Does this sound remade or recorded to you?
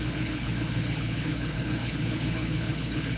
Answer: remade